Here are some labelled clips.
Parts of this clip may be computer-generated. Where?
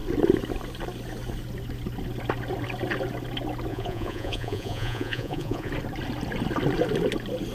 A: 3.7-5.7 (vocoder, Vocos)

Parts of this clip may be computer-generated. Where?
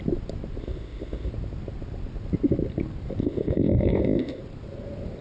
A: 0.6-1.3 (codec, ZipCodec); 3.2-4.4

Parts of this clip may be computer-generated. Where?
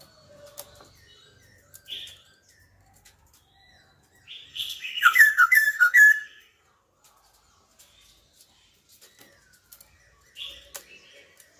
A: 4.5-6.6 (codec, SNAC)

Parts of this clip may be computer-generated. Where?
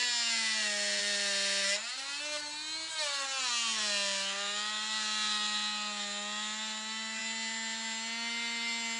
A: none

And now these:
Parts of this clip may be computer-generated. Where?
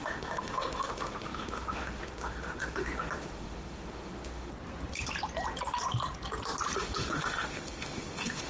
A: 0.0-4.5 (autoencoder, DAC-VAE); 6.8-8.5